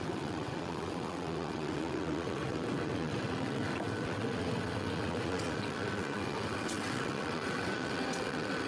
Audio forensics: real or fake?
fake